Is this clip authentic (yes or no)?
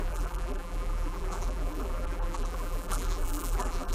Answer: no